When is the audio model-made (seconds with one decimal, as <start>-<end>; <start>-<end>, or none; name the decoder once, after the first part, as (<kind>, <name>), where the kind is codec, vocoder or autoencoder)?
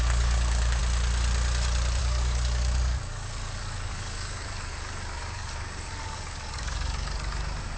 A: 0.0-0.8 (codec, DAC); 2.0-7.8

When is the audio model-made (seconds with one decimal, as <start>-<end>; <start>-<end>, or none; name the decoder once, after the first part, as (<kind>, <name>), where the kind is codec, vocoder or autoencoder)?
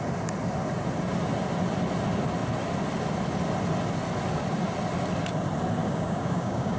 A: 5.8-6.8 (codec, DAC)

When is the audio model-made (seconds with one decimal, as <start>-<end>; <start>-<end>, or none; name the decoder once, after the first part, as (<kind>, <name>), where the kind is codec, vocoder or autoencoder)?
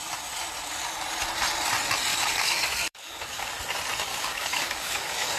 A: 2.1-3.5 (codec, DAC); 4.1-5.4